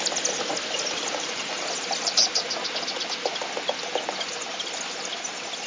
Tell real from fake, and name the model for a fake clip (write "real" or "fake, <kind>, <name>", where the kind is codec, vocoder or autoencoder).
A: real